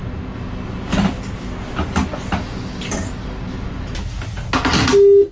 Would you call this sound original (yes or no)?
yes